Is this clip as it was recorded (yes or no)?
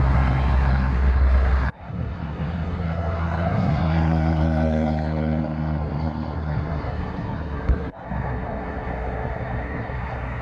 no